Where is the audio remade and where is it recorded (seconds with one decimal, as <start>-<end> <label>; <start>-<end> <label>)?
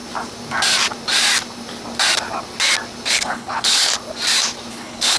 0.0-3.1 recorded; 3.1-3.9 remade; 3.9-4.7 recorded; 4.7-5.2 remade